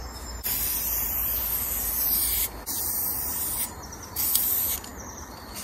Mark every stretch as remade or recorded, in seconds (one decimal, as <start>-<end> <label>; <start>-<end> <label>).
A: 0.0-2.2 recorded; 2.2-5.6 remade